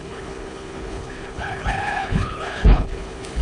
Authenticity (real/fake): fake